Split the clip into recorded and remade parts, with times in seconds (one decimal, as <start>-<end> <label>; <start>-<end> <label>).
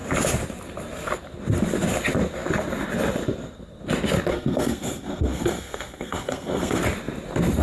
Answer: 0.0-4.3 recorded; 4.3-6.8 remade; 6.8-7.6 recorded